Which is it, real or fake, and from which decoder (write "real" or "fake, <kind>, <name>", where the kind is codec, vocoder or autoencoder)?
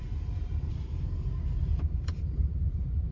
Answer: fake, vocoder, BigVGAN v2